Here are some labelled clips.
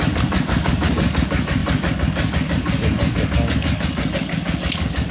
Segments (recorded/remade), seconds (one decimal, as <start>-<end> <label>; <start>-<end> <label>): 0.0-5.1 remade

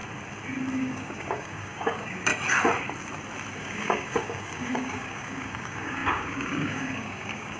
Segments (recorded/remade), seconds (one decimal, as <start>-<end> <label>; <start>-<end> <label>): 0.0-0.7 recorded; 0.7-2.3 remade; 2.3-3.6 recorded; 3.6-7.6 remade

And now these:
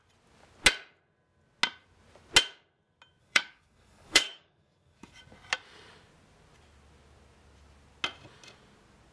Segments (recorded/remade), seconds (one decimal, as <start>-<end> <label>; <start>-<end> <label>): 0.0-3.2 recorded; 3.2-5.2 remade; 5.2-9.1 recorded

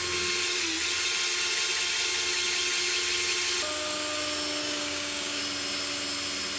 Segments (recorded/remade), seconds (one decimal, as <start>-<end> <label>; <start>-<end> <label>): 0.0-4.6 recorded; 4.6-5.4 remade; 5.4-6.6 recorded

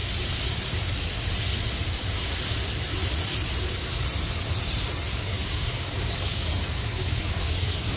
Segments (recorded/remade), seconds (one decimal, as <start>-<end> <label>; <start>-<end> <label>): 0.0-5.1 recorded; 5.1-8.0 remade

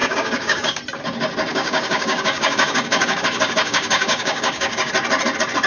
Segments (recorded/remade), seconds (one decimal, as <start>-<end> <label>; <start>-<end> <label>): 0.0-0.8 remade; 0.8-1.5 recorded; 1.5-4.9 remade; 4.9-5.7 recorded